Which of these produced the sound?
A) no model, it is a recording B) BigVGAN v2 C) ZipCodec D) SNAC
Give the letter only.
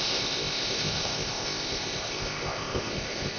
C